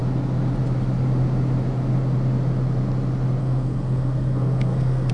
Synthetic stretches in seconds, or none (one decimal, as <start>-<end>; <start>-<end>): 3.4-5.1